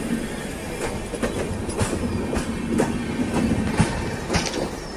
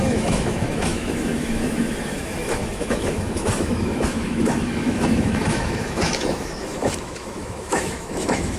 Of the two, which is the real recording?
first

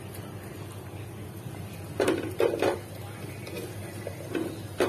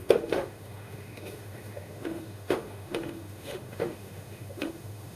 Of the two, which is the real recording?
first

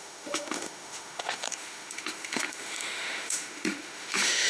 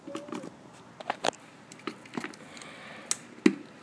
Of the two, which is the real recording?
second